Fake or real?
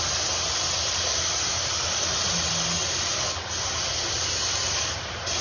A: real